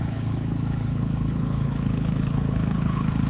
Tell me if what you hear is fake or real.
fake